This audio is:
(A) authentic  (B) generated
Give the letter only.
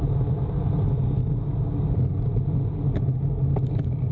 A